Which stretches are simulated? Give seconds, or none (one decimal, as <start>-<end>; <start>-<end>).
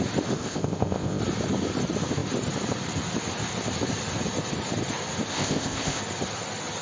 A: 0.4-1.2; 5.3-6.0